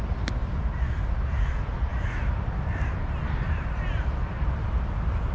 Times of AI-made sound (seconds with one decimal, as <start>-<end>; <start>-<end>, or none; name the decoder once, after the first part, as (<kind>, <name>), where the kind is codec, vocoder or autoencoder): none